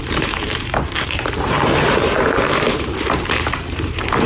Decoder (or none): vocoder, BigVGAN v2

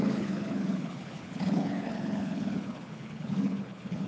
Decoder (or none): codec, HILCodec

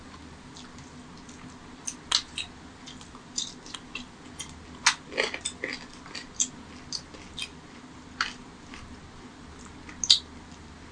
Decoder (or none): none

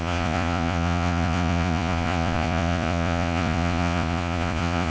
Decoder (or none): vocoder, Vocos